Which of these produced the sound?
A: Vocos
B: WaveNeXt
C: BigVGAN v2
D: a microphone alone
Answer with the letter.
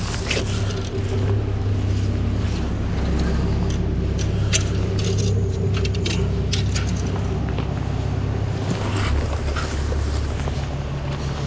D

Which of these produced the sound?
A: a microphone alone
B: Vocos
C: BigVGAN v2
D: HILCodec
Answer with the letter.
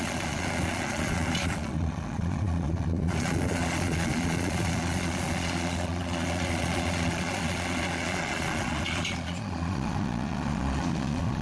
B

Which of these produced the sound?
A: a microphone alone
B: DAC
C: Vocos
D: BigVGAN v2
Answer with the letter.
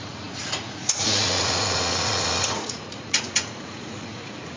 C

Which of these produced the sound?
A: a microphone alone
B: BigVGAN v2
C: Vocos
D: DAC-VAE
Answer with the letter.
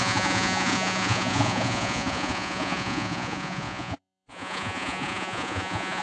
C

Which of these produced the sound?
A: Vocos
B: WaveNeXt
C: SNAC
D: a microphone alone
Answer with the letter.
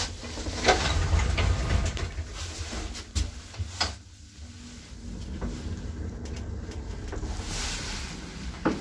D